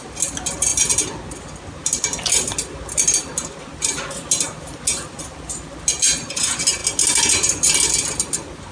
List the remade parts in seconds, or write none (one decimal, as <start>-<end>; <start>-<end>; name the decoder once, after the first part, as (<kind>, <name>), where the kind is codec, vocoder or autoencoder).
none